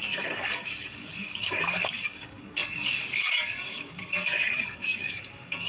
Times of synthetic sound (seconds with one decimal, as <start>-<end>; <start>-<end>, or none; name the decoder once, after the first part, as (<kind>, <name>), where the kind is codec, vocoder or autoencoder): 0.0-5.7 (codec, DAC)